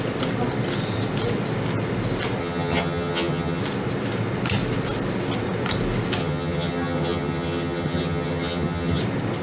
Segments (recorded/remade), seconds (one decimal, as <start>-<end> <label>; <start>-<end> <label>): 0.0-2.4 recorded; 2.4-3.6 remade; 3.6-6.2 recorded; 6.2-9.0 remade; 9.0-9.4 recorded

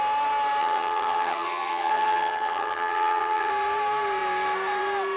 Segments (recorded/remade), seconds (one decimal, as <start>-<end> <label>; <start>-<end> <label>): 0.0-0.6 recorded; 0.6-3.5 remade; 3.5-5.2 recorded

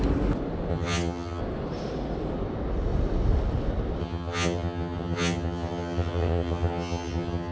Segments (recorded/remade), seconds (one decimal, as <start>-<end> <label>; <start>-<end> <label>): 0.0-0.7 recorded; 0.7-1.4 remade; 1.4-4.0 recorded; 4.0-7.5 remade

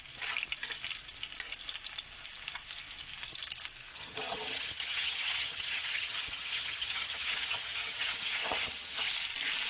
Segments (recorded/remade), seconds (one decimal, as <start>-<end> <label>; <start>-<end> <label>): 0.0-3.9 recorded; 3.9-9.1 remade; 9.1-9.7 recorded